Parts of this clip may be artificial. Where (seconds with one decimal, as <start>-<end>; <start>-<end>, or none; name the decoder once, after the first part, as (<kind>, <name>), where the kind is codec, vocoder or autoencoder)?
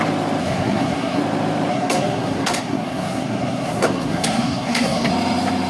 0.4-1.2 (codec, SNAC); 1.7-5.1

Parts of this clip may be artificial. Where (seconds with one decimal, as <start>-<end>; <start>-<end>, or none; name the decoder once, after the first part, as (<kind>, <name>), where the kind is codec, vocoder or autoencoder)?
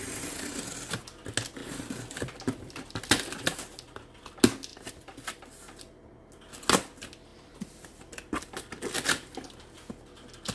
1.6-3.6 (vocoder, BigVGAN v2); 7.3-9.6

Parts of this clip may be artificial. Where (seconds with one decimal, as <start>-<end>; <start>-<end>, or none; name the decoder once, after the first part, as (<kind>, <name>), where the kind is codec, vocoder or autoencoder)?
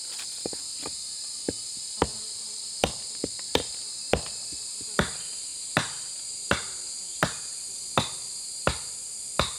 none